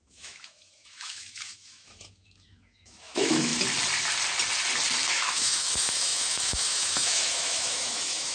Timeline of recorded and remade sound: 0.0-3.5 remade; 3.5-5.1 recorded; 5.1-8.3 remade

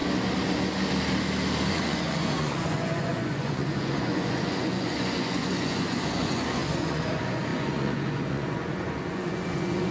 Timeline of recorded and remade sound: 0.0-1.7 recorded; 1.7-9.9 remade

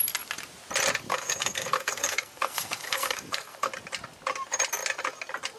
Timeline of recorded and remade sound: 0.0-1.1 recorded; 1.1-3.7 remade; 3.7-5.6 recorded